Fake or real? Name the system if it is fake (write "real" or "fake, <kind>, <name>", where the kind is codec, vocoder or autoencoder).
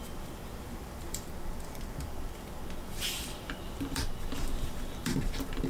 fake, vocoder, BigVGAN v2